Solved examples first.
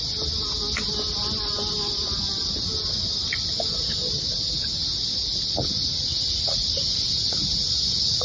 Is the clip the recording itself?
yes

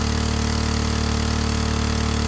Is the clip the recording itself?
yes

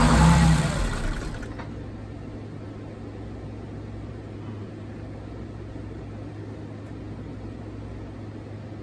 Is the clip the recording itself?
yes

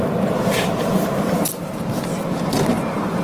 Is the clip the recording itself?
yes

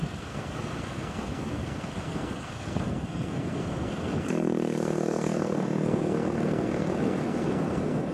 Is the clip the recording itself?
no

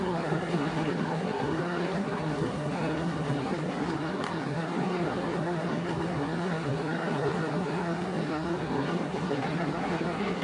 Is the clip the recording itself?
no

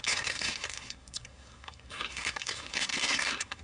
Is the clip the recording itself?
no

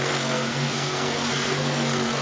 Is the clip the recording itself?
no